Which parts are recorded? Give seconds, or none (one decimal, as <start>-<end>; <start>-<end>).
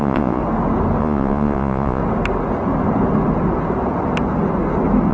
0.4-1.0; 2.0-5.1